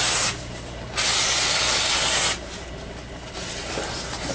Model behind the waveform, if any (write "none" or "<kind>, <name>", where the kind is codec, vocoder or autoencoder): none